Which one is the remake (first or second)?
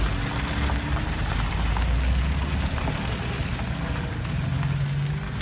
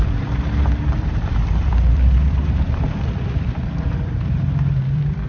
second